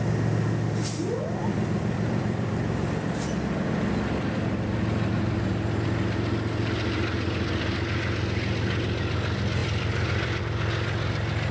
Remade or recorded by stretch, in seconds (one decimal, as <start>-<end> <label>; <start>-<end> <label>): 0.0-1.4 recorded; 1.4-2.6 remade; 2.6-9.6 recorded; 9.6-10.4 remade; 10.4-11.5 recorded